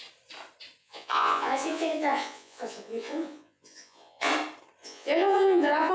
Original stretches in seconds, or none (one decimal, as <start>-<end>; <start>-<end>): 0.0-0.8; 4.3-4.8